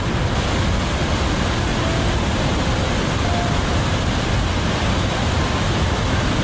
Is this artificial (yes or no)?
no